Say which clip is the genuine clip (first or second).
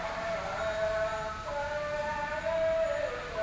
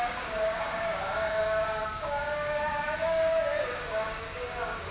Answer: first